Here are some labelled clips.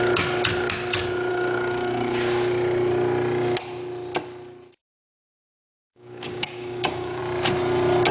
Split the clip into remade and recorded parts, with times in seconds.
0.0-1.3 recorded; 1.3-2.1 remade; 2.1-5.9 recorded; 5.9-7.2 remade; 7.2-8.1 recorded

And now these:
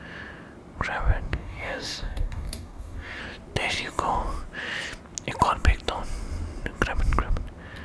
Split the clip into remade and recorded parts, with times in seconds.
0.0-1.3 recorded; 1.3-3.2 remade; 3.2-7.8 recorded

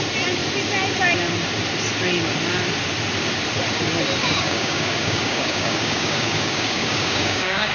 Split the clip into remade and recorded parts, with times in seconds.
0.0-4.2 recorded; 4.2-7.7 remade

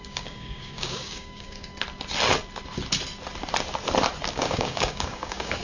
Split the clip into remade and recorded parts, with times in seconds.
0.0-1.7 remade; 1.7-4.2 recorded; 4.2-5.6 remade

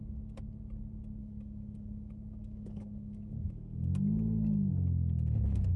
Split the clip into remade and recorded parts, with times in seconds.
0.0-1.2 recorded; 1.2-4.7 remade; 4.7-5.8 recorded

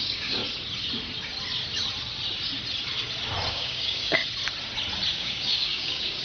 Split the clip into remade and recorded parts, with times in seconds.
0.0-0.4 remade; 0.4-3.5 recorded; 3.5-4.2 remade; 4.2-5.2 recorded; 5.2-6.2 remade

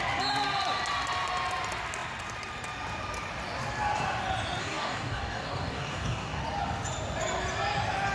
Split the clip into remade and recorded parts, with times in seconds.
0.0-4.6 recorded; 4.6-6.4 remade; 6.4-8.1 recorded